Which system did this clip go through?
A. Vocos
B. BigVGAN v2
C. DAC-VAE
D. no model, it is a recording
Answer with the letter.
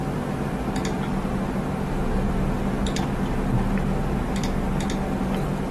D